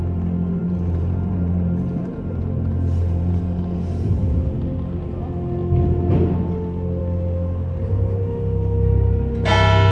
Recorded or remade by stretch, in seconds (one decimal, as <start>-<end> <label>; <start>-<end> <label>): 0.0-0.6 recorded; 0.6-4.2 remade; 4.2-9.9 recorded